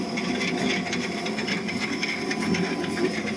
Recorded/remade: recorded